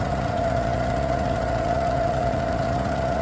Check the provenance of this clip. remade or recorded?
remade